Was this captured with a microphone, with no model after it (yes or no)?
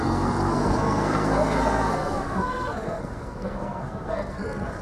no